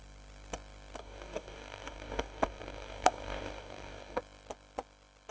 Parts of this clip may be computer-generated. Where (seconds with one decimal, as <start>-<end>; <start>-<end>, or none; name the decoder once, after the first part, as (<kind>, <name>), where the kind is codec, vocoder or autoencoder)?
1.0-4.2 (codec, DAC)